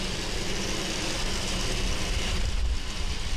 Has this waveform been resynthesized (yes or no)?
no